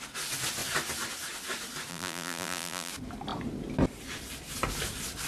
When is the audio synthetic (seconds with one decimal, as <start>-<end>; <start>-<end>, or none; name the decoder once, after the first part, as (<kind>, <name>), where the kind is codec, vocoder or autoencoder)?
1.9-2.9 (vocoder, BigVGAN v2)